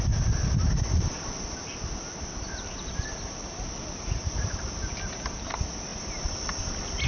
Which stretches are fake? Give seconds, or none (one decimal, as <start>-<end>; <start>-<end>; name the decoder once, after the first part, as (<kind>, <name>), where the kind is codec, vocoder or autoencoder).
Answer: none

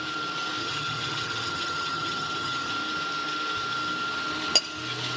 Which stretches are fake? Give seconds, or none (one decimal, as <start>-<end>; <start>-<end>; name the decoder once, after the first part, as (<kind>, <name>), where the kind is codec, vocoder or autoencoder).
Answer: 0.6-2.7 (vocoder, HiFi-GAN)

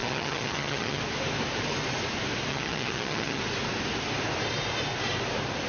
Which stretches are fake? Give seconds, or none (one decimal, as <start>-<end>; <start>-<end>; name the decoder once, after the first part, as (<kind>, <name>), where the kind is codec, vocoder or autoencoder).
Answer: 0.0-1.0 (vocoder, HiFi-GAN); 2.5-3.4

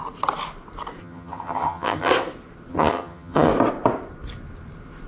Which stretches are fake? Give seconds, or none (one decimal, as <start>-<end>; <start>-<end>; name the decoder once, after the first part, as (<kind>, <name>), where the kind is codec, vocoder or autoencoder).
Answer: 1.0-2.1 (vocoder, HiFi-GAN); 2.7-3.5